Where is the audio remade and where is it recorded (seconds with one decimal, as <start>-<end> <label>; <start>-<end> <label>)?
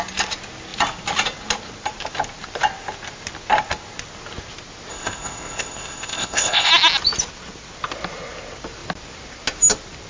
0.0-4.9 recorded; 4.9-6.7 remade; 6.7-10.1 recorded